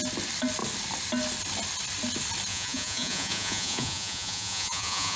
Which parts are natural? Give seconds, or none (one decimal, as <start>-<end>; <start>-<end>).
0.0-2.5